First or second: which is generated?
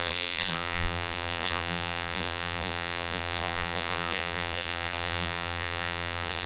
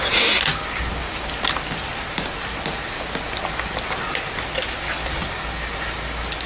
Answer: first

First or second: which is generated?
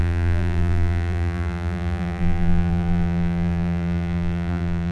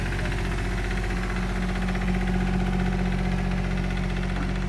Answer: first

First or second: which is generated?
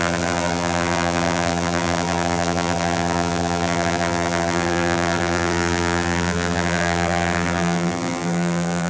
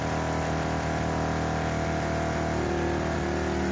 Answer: first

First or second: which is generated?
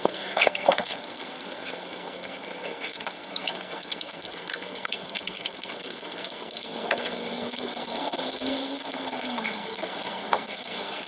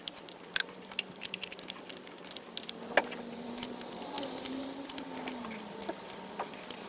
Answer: first